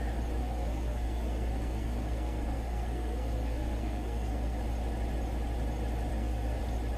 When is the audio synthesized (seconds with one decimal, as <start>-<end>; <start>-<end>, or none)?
0.4-4.6; 6.1-6.6